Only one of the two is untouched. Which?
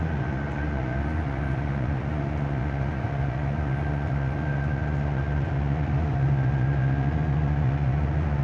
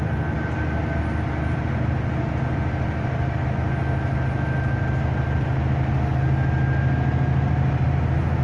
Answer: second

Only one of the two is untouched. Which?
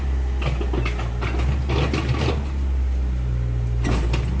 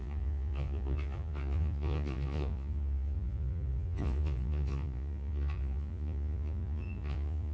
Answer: first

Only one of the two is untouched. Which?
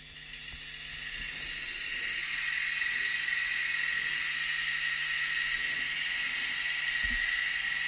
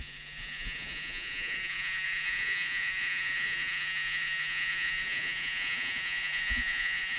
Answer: first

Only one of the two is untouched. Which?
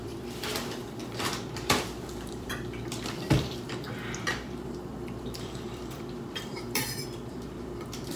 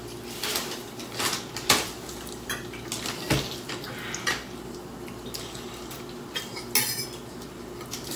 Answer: second